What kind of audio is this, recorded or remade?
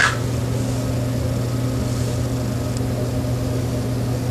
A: recorded